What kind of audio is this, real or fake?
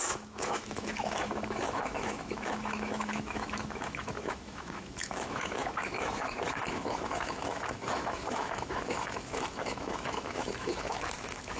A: fake